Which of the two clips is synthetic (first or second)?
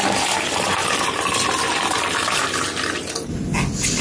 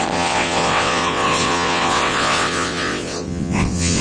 second